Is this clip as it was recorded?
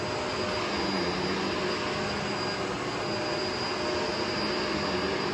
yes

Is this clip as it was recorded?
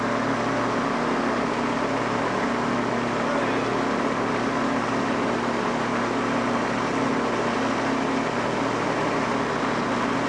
yes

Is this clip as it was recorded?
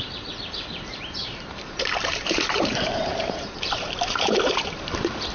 no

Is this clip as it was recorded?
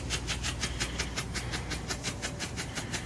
no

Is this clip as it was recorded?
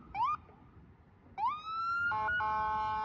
yes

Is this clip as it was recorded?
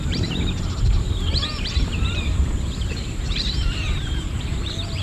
no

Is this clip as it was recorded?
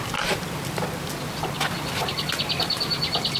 yes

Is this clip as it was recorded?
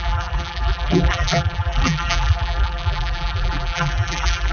no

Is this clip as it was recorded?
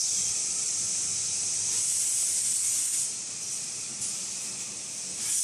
no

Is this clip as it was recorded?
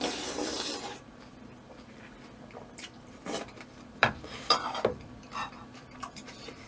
no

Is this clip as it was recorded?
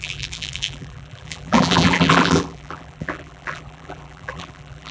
no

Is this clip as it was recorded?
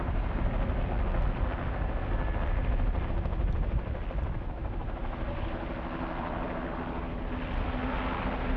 yes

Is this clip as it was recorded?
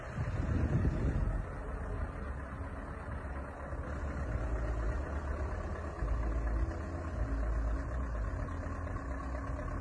yes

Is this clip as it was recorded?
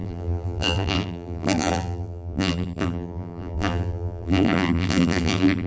no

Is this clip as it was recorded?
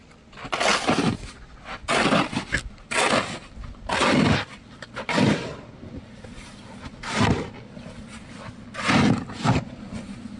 yes